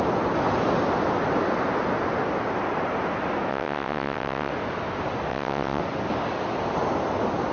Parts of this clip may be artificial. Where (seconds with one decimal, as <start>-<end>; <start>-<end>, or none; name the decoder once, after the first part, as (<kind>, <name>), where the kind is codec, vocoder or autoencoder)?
3.5-4.5 (vocoder, WaveNeXt); 5.3-5.8